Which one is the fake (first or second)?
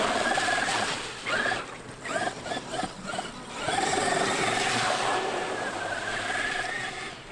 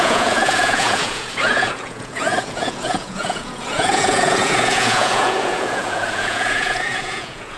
second